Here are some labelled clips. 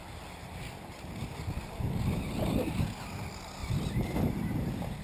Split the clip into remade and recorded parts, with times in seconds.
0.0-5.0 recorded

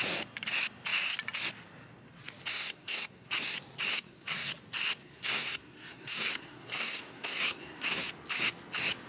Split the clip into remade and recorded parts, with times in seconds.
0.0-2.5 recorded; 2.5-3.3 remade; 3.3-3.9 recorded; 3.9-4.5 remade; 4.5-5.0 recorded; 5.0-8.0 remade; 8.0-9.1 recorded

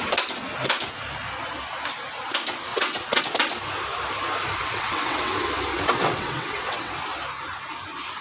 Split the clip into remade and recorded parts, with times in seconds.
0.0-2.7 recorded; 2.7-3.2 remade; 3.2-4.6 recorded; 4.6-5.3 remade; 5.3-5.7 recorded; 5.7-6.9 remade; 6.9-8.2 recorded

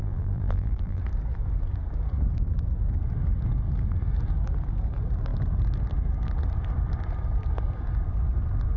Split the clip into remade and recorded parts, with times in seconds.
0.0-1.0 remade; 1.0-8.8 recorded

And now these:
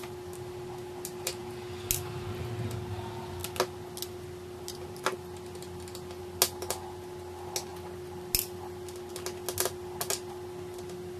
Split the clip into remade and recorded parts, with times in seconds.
0.0-11.2 recorded

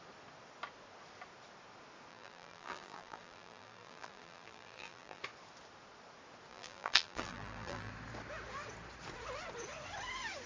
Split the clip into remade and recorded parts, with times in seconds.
0.0-2.1 recorded; 2.1-5.2 remade; 5.2-6.5 recorded; 6.5-7.9 remade; 7.9-10.5 recorded

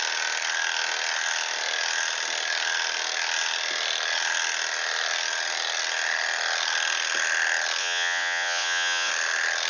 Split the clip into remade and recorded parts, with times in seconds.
0.0-7.8 recorded; 7.8-9.1 remade; 9.1-9.7 recorded